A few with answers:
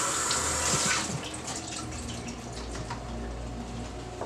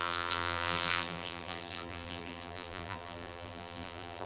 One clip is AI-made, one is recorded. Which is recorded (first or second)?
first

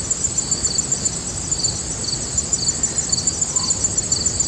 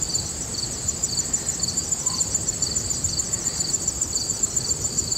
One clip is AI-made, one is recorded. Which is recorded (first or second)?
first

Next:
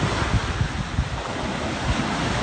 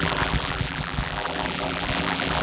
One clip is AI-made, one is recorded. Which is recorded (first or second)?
first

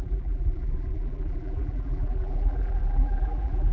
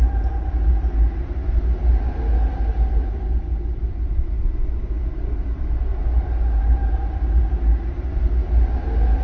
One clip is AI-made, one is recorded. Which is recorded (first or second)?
second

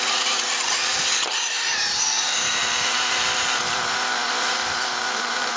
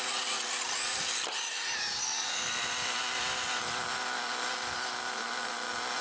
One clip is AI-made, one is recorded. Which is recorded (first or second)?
second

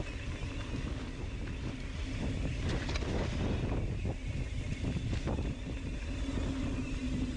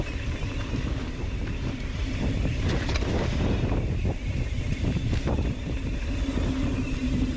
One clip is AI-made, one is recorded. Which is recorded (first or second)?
first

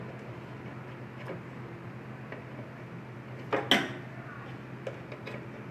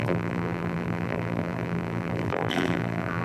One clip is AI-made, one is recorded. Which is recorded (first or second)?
first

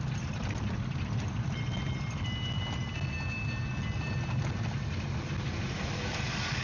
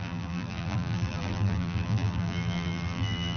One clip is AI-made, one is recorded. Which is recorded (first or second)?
first